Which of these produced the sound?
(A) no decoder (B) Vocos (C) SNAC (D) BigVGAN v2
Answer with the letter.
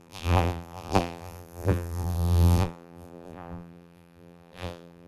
D